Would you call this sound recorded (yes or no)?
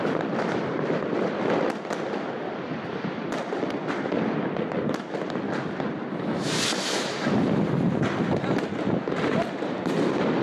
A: no